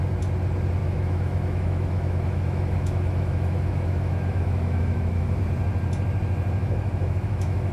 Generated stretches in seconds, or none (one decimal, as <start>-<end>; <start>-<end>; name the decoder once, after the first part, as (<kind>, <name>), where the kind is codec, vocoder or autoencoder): 0.8-5.4 (autoencoder, DAC-VAE); 6.6-7.7